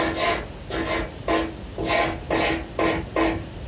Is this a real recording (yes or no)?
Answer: yes